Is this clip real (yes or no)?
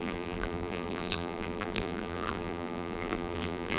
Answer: no